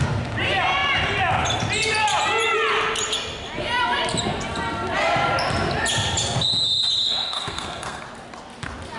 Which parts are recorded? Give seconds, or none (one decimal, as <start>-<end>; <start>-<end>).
0.0-7.0; 8.0-9.0